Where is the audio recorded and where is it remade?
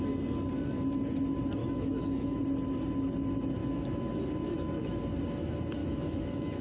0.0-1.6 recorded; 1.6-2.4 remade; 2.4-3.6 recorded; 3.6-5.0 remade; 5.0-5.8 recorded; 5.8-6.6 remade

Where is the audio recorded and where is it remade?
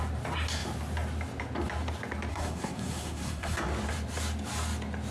0.0-2.3 recorded; 2.3-3.6 remade; 3.6-5.1 recorded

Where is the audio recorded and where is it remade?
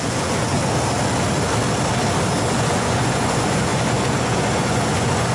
0.0-0.6 remade; 0.6-2.5 recorded; 2.5-5.3 remade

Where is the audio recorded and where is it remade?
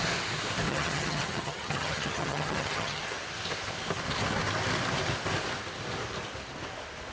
0.0-0.7 recorded; 0.7-3.0 remade; 3.0-7.1 recorded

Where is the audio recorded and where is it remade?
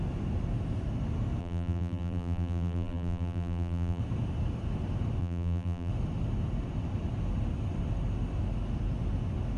0.0-1.4 recorded; 1.4-4.0 remade; 4.0-5.2 recorded; 5.2-5.9 remade; 5.9-9.6 recorded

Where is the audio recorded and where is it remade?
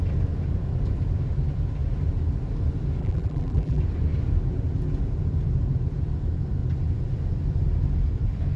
0.0-3.0 recorded; 3.0-3.8 remade; 3.8-8.6 recorded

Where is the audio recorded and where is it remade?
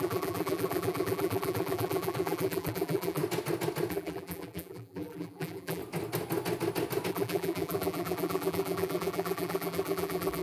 0.0-3.2 remade; 3.2-3.9 recorded; 3.9-5.8 remade; 5.8-7.1 recorded; 7.1-10.4 remade